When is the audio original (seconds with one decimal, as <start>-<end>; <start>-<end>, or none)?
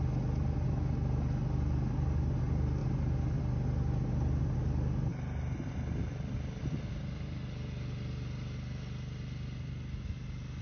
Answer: 0.0-10.6